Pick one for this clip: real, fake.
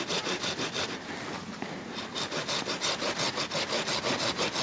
real